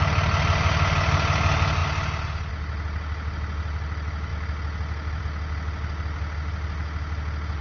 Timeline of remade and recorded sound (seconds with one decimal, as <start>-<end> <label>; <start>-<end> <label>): 0.0-7.6 recorded